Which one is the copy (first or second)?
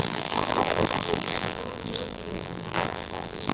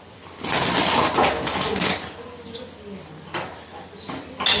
first